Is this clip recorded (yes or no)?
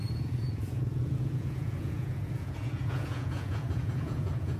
no